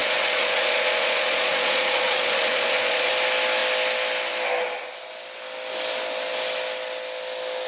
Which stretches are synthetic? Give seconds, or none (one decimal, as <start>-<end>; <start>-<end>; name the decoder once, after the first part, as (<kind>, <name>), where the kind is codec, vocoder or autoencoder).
0.0-3.1 (vocoder, Vocos)